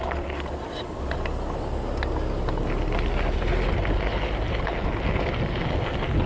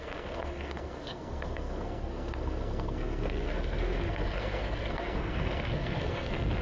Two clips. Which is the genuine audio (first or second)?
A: first